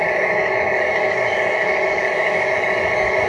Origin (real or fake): fake